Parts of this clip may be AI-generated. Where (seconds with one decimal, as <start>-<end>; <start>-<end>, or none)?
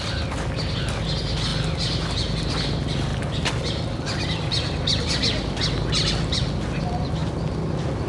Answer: none